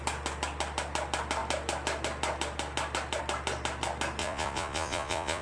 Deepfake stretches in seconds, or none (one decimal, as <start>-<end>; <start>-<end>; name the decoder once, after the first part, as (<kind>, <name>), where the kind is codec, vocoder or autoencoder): 4.2-5.4 (vocoder, Vocos)